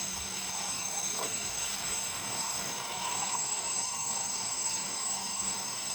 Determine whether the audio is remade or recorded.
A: remade